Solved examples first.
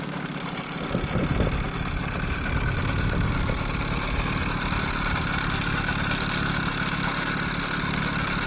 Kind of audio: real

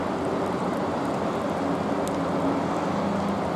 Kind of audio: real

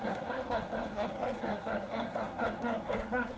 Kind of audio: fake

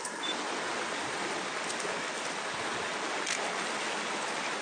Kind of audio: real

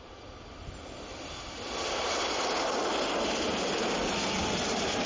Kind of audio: real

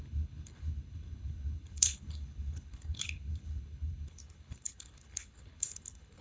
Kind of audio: fake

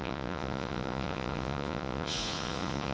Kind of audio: fake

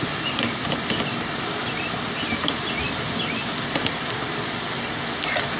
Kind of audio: real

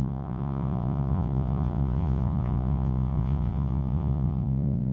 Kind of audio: fake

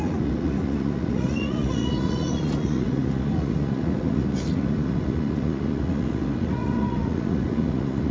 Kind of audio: fake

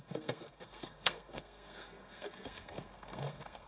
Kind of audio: fake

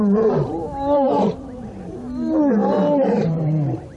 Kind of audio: fake